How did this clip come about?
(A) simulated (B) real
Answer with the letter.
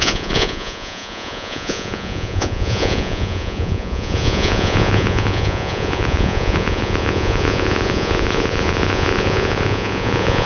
A